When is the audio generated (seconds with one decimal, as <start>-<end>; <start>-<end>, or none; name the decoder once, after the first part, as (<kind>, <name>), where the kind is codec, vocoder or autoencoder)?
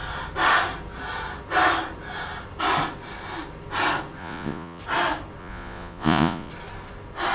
4.2-4.8 (vocoder, Vocos); 5.4-6.5